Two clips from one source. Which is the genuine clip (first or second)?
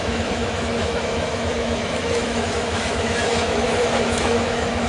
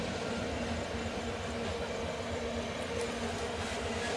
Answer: second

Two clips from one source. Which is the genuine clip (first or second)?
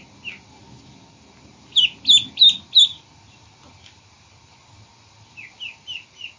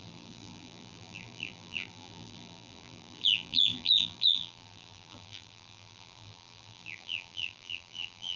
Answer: first